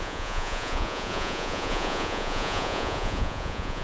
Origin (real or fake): fake